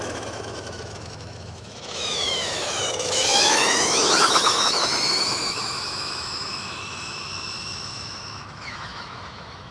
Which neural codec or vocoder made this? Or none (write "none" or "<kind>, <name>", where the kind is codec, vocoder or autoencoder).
autoencoder, DAC-VAE